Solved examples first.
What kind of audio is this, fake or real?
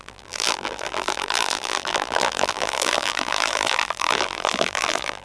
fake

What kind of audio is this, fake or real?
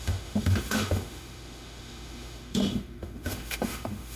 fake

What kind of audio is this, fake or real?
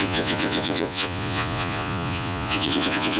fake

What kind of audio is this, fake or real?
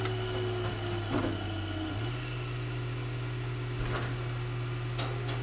real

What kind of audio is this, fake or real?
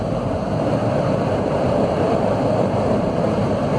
fake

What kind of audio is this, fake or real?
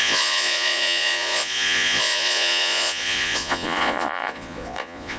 fake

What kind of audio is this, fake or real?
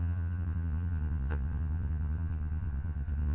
fake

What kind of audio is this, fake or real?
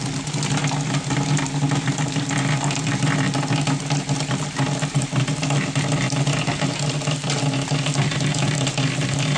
real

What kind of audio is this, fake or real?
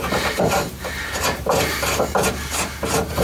fake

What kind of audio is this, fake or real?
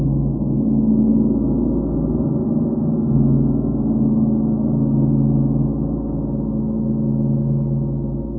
real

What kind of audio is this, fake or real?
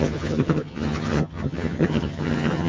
fake